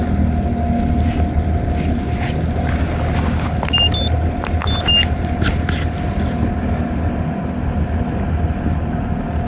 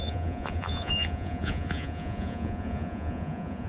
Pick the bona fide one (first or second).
first